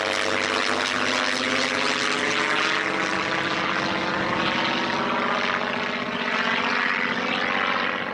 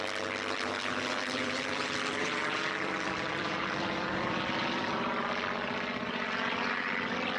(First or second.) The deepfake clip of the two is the second